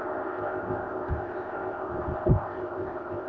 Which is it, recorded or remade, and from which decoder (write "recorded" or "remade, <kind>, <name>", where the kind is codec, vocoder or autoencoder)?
remade, codec, ZipCodec